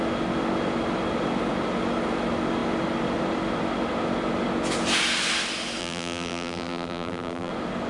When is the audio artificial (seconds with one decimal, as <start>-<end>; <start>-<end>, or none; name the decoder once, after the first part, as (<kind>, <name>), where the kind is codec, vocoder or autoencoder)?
5.8-7.5 (vocoder, BigVGAN v2)